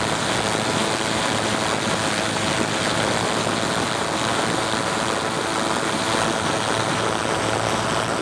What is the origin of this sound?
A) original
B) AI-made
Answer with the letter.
A